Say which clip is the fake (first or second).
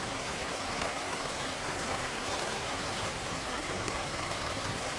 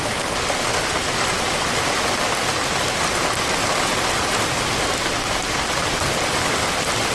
first